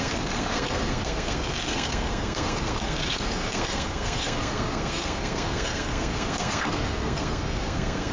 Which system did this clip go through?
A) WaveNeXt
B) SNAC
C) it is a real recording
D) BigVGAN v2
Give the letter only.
B